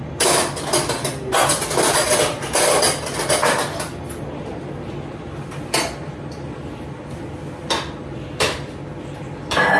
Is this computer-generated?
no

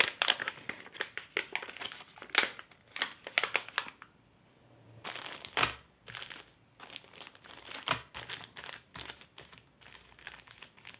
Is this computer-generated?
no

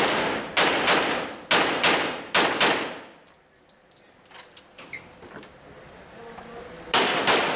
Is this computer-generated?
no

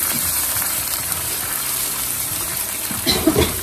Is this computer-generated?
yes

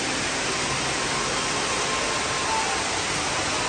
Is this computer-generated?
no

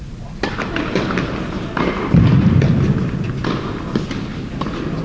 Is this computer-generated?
no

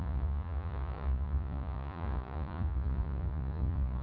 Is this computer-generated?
yes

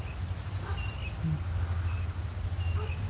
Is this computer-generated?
no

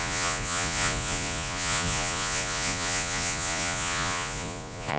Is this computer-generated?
yes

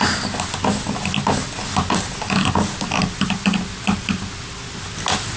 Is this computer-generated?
no